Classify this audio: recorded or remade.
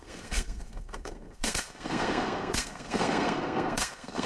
remade